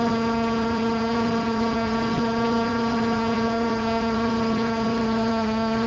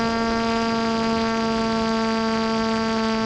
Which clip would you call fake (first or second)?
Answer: first